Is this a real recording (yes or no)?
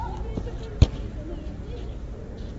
yes